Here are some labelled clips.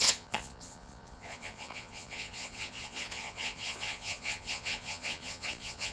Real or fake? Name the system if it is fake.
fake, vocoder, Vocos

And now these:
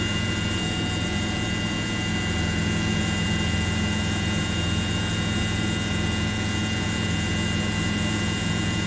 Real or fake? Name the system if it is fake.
fake, vocoder, Vocos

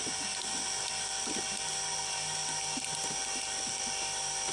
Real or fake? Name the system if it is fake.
real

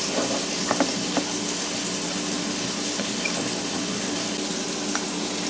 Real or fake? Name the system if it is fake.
real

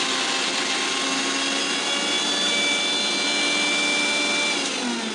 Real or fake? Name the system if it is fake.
real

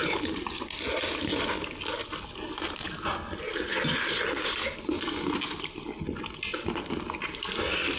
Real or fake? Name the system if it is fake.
real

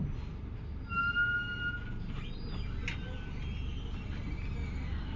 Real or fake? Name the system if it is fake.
real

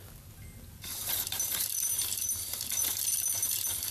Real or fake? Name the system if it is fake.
real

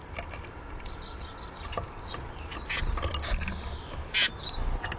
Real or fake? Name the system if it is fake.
real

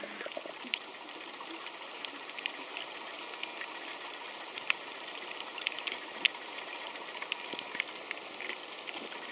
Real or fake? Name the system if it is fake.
real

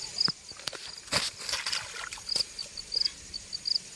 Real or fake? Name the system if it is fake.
real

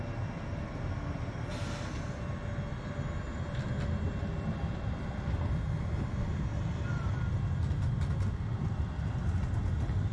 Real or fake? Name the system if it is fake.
real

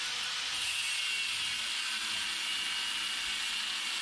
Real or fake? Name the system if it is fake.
real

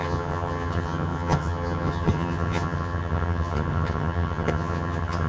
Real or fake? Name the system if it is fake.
fake, vocoder, HiFi-GAN